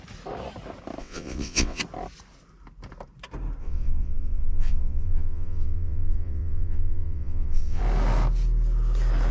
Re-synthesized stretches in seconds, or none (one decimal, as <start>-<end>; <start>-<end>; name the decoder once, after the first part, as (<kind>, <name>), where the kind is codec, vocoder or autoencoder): 1.0-1.8 (vocoder, WaveNeXt); 3.6-7.8